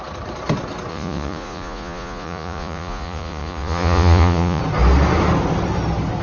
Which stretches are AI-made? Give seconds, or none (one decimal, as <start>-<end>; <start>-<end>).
0.9-4.6